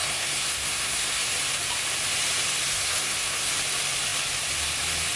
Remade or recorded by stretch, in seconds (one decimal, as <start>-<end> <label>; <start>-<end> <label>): 0.0-1.3 remade; 1.3-2.7 recorded; 2.7-3.5 remade; 3.5-5.2 recorded